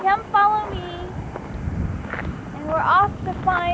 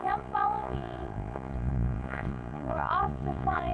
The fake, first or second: second